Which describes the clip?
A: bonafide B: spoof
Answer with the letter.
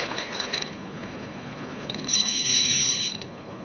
B